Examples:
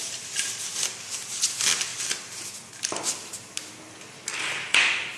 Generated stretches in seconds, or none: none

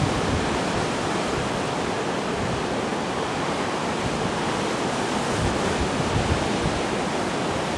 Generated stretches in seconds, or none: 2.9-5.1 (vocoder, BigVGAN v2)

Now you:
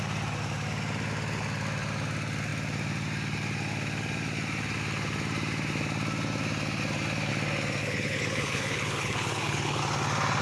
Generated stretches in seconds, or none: 7.8-9.8 (codec, HILCodec)

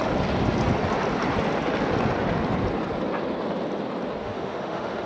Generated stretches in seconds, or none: 4.2-5.1 (autoencoder, DAC-VAE)

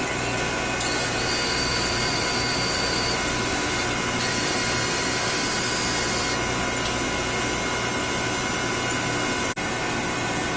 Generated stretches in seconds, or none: 1.7-5.6 (vocoder, BigVGAN v2)

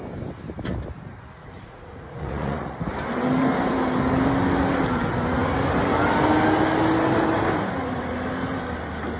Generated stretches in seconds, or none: 1.4-2.8 (vocoder, Vocos)

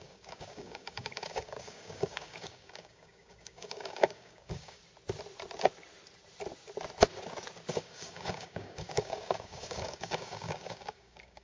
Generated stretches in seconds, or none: 0.0-4.8 (codec, DAC); 7.7-11.4

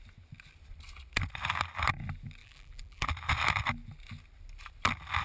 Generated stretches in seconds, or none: 2.4-3.1 (vocoder, BigVGAN v2)